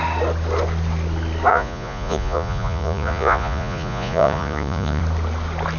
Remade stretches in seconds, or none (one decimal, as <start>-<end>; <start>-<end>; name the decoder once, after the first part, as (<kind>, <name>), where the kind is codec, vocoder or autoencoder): 1.5-5.0 (vocoder, Vocos)